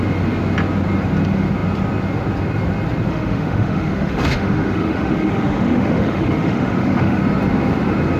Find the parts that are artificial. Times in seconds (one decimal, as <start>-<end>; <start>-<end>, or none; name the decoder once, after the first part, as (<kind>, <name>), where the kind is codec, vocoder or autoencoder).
3.1-7.2 (autoencoder, DAC-VAE)